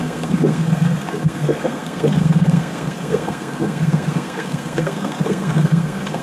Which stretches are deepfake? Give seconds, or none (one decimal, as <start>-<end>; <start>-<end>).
0.0-6.2